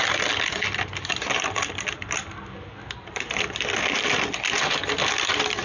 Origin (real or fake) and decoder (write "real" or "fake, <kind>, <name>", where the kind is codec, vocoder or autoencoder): real